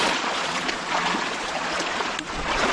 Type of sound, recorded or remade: remade